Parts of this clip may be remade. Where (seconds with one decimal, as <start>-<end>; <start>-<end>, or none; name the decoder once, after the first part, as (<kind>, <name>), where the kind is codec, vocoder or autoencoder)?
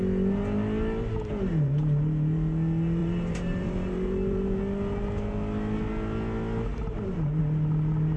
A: 3.0-4.6 (vocoder, BigVGAN v2); 6.7-7.4